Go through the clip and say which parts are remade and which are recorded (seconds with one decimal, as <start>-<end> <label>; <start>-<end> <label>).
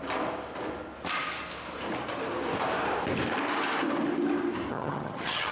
0.0-4.7 recorded; 4.7-5.5 remade